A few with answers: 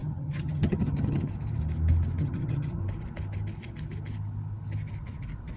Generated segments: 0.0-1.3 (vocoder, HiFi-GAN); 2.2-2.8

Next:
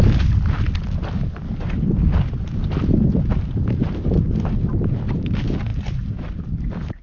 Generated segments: none